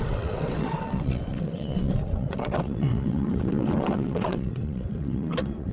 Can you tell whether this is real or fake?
fake